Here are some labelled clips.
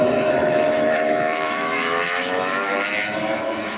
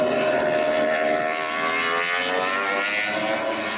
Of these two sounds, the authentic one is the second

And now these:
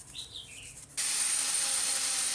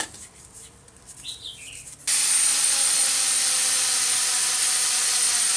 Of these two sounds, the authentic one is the second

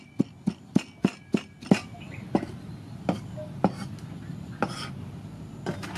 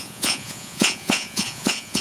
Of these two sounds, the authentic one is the first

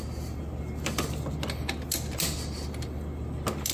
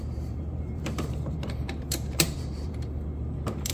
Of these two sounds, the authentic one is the first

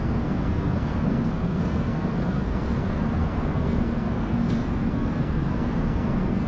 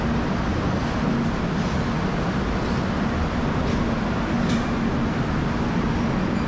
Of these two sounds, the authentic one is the second